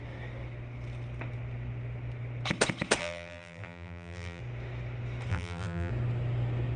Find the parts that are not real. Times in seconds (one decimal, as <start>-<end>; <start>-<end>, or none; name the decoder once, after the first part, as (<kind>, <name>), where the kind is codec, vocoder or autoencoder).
3.0-4.4 (vocoder, BigVGAN v2); 5.3-5.9